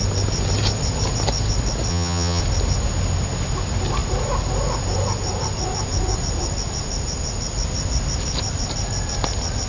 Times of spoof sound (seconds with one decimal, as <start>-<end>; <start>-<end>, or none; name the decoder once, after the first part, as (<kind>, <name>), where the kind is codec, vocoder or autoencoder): 1.9-2.4 (vocoder, HiFi-GAN)